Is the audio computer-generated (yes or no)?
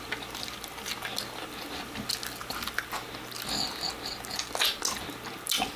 no